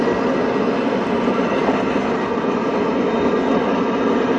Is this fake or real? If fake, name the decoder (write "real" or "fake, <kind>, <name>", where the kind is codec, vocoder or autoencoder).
real